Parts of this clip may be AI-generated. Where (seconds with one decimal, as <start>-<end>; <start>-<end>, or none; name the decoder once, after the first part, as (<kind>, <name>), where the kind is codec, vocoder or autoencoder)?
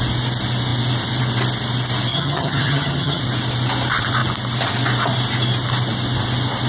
2.1-3.2 (vocoder, HiFi-GAN)